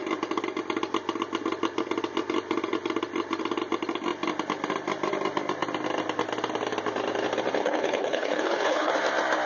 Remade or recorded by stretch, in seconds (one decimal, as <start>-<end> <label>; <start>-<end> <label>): 0.0-7.6 recorded; 7.6-8.9 remade; 8.9-9.5 recorded